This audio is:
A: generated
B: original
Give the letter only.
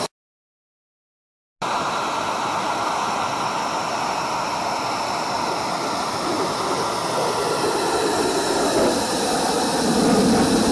B